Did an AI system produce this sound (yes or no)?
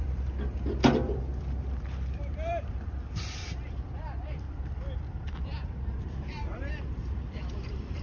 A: yes